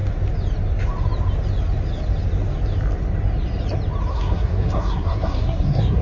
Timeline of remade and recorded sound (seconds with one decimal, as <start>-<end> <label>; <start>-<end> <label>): 0.0-4.1 recorded; 4.1-6.0 remade